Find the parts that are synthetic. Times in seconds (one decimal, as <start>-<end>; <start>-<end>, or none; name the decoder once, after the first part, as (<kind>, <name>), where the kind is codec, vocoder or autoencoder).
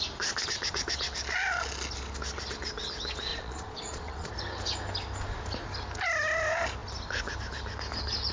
3.3-4.3 (vocoder, Vocos)